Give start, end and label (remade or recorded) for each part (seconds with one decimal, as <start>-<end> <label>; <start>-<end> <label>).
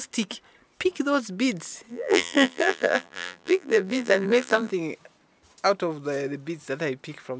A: 0.0-1.9 recorded; 1.9-4.7 remade; 4.7-7.4 recorded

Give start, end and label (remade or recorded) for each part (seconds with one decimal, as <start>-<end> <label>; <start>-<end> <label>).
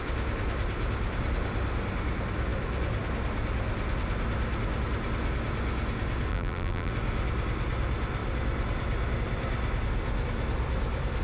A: 0.0-6.3 recorded; 6.3-6.9 remade; 6.9-11.2 recorded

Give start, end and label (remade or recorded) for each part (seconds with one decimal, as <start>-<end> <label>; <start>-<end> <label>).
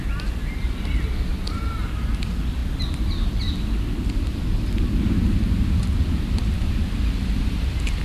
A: 0.0-8.0 recorded